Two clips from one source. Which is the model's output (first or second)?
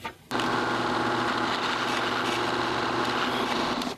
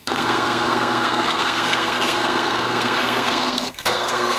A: second